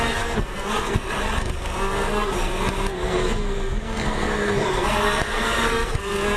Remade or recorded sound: remade